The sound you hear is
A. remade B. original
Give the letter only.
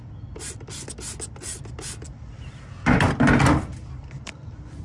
B